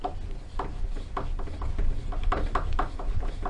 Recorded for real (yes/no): yes